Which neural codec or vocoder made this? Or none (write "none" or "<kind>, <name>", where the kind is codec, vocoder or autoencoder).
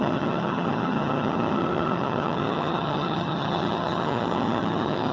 vocoder, HiFi-GAN